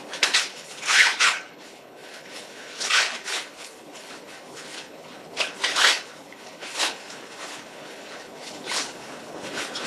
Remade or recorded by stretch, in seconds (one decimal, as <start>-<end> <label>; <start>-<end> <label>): 0.0-9.9 remade